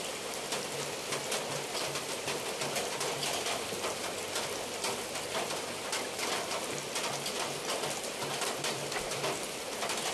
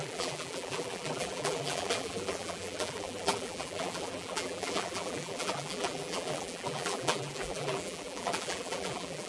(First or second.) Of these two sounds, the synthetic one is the second